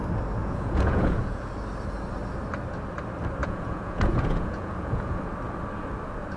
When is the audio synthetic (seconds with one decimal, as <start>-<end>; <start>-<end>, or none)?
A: 0.4-1.5; 3.4-5.2